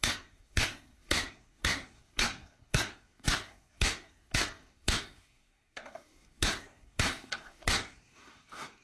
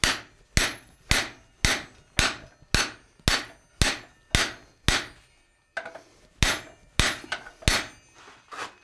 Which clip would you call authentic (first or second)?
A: second